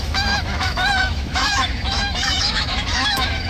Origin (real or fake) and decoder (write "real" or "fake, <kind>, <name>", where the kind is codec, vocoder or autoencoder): fake, autoencoder, DAC-VAE